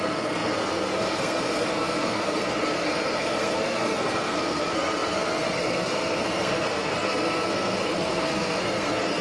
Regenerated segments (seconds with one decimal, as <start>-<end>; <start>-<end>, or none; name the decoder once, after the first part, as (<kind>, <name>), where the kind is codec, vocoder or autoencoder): 0.0-9.2 (codec, SNAC)